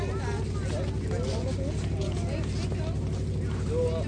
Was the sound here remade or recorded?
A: recorded